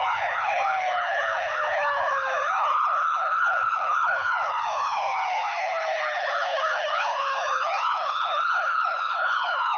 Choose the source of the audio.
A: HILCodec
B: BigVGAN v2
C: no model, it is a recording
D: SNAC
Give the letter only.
A